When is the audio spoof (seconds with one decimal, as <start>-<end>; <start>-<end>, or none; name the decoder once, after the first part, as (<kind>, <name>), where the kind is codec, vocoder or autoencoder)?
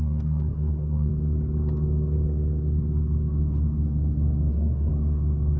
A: 0.0-1.1 (codec, SNAC); 4.5-4.9